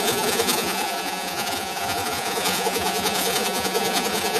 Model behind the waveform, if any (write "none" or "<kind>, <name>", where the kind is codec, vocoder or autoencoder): vocoder, Vocos